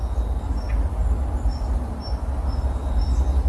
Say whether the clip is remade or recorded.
recorded